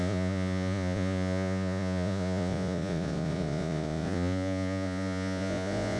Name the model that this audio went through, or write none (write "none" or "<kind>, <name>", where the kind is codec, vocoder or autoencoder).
vocoder, Vocos